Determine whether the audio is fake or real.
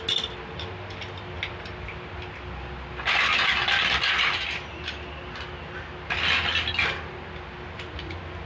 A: real